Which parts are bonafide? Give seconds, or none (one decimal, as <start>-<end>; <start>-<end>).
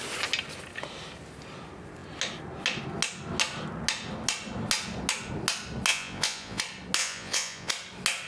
0.0-5.9; 6.6-7.0; 7.7-8.3